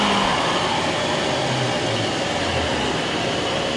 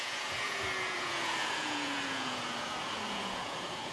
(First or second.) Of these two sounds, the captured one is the first